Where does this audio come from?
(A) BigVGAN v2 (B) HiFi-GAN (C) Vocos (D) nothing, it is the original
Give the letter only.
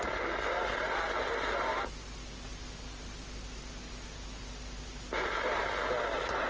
D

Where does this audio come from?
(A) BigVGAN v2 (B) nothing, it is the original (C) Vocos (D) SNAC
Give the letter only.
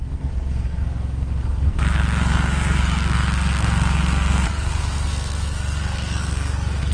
D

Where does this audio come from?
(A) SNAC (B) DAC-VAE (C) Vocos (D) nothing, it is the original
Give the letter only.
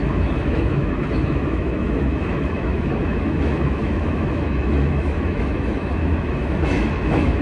B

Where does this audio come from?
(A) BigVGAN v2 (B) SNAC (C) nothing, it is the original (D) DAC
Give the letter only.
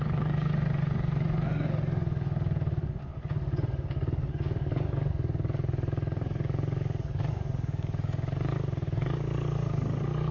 D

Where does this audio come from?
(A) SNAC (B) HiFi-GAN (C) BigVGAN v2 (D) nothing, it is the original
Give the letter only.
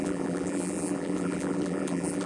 C